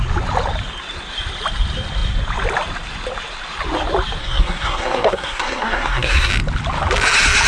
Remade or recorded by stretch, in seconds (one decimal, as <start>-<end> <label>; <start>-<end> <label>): 0.0-4.2 recorded; 4.2-6.3 remade; 6.3-7.5 recorded